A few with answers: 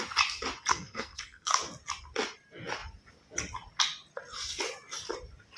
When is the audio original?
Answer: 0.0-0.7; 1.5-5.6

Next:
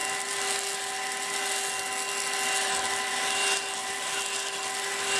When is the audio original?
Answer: 0.0-5.2

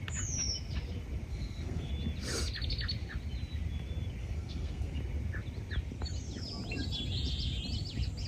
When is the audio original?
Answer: 0.0-1.3; 1.9-4.2; 5.0-8.3

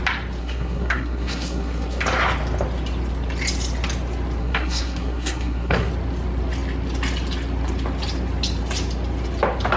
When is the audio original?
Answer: 0.0-0.4; 2.0-4.4; 5.9-9.8

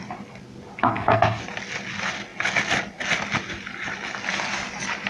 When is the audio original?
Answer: 0.0-0.8; 1.4-5.1

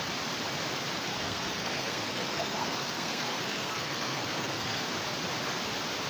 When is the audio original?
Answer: 0.0-1.1; 4.8-6.1

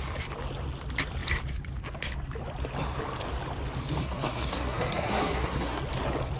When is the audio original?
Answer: 0.0-4.0; 5.8-6.4